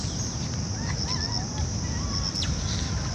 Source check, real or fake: real